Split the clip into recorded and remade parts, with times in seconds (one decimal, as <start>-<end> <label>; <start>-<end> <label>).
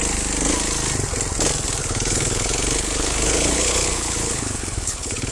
0.0-1.8 recorded; 1.8-5.3 remade